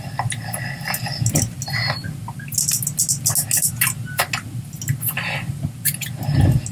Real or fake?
real